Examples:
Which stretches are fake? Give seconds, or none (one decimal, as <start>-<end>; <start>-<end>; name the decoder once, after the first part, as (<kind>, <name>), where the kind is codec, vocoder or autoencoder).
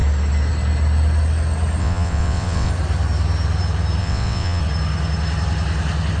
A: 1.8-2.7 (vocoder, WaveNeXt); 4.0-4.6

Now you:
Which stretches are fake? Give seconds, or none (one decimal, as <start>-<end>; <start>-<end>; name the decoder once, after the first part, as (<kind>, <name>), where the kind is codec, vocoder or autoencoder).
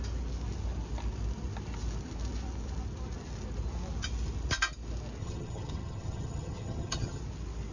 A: 5.2-7.2 (vocoder, HiFi-GAN)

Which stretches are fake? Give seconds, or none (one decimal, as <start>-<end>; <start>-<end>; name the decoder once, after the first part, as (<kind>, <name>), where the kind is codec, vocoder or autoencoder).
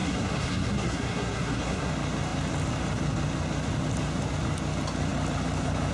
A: 0.0-1.9 (codec, SNAC)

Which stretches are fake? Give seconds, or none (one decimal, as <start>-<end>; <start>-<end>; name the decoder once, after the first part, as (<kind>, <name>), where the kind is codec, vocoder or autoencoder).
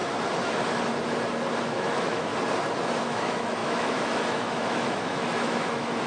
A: 1.6-2.3 (autoencoder, DAC-VAE); 3.0-6.1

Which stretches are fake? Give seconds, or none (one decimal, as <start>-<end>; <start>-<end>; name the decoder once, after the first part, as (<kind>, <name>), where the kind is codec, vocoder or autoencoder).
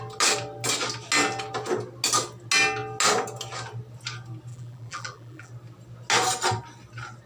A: 4.5-5.5 (vocoder, BigVGAN v2)